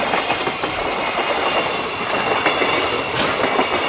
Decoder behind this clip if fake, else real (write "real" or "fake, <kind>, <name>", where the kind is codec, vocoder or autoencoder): real